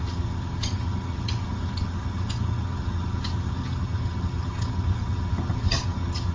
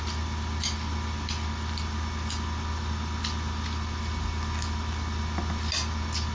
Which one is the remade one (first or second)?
first